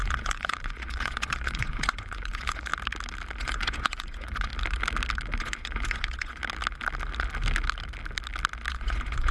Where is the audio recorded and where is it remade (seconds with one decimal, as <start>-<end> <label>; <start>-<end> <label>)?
0.0-2.7 remade; 2.7-3.4 recorded; 3.4-4.5 remade; 4.5-5.4 recorded; 5.4-6.4 remade; 6.4-8.7 recorded; 8.7-9.3 remade